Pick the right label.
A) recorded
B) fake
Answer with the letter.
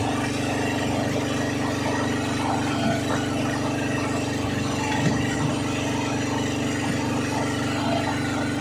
A